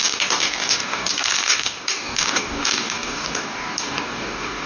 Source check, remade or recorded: remade